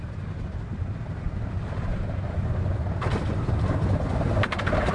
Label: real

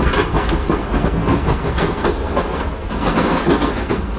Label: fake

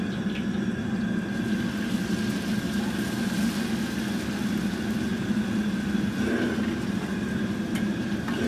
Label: real